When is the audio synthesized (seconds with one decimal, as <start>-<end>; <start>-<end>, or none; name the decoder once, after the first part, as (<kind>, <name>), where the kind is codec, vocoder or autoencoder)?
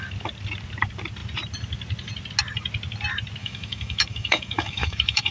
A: 3.4-5.3 (autoencoder, DAC-VAE)